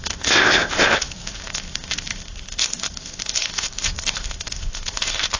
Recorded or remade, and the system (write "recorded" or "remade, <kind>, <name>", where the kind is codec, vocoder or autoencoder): remade, codec, ZipCodec